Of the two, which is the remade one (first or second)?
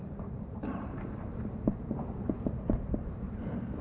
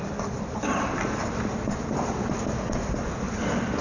first